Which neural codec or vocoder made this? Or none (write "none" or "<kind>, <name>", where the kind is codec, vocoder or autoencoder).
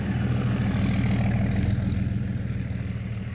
none